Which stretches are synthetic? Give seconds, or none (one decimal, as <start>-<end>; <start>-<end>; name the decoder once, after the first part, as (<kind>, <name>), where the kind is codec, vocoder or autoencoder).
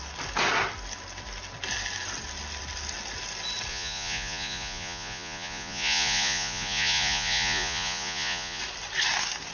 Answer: 3.7-8.6 (vocoder, Vocos)